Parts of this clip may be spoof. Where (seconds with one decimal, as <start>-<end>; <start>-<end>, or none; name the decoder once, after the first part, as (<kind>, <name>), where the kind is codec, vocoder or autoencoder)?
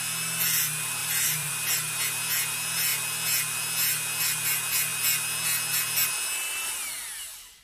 1.0-1.5 (vocoder, BigVGAN v2)